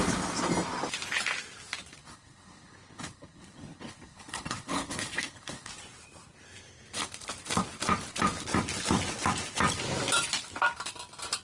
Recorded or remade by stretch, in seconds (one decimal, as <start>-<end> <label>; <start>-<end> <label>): 0.0-2.0 recorded; 2.0-5.7 remade; 5.7-11.4 recorded